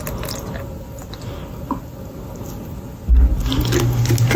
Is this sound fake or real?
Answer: real